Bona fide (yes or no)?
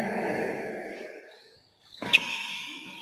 no